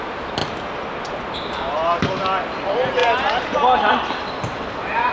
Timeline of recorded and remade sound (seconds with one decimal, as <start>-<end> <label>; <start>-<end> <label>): 0.0-5.1 recorded